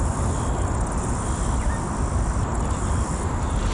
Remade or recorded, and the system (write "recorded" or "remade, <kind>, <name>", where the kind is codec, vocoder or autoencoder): recorded